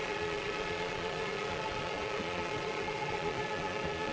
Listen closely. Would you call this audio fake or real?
fake